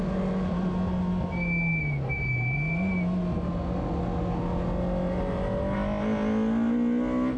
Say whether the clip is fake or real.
real